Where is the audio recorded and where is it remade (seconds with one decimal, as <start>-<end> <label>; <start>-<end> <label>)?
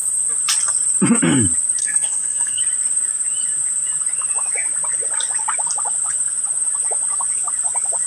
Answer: 0.0-1.8 recorded; 1.8-2.6 remade; 2.6-8.1 recorded